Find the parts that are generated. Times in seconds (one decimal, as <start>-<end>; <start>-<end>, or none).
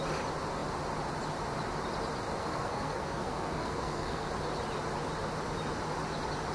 2.4-4.3